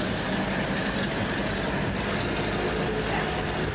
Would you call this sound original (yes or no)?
yes